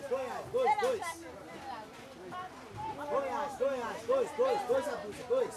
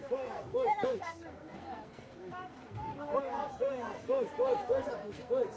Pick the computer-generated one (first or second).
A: second